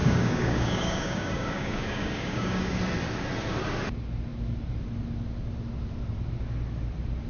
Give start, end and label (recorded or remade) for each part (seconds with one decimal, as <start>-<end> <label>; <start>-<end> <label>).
0.0-2.8 remade; 2.8-7.3 recorded